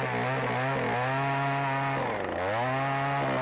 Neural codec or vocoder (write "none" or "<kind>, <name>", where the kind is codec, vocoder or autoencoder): none